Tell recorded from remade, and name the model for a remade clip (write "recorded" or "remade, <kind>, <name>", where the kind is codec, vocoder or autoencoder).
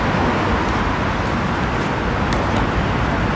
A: recorded